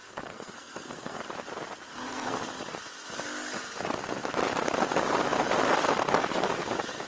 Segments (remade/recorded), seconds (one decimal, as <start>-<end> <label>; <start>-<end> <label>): 0.0-1.2 remade; 1.2-1.9 recorded; 1.9-2.4 remade; 2.4-7.1 recorded